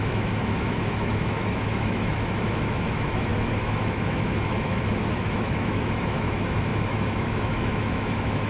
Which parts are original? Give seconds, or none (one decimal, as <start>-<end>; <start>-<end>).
none